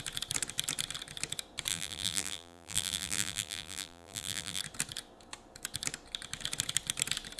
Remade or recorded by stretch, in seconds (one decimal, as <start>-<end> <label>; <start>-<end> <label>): 0.0-1.7 recorded; 1.7-4.6 remade; 4.6-7.4 recorded